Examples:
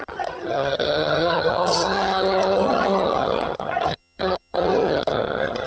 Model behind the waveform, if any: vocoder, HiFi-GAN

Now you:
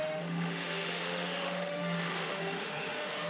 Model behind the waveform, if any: autoencoder, DAC-VAE